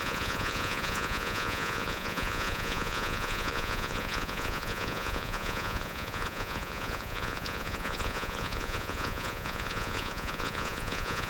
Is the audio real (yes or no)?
no